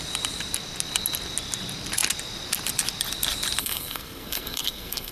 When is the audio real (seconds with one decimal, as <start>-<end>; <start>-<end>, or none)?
0.0-3.6